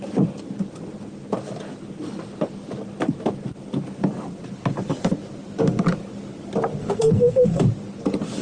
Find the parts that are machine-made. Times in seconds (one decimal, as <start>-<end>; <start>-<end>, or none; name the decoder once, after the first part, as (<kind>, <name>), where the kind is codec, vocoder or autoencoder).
6.8-7.6 (codec, SNAC)